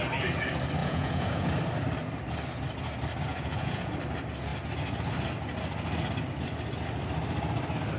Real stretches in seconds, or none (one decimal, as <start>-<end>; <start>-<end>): 0.0-0.8; 1.5-3.3; 3.9-8.0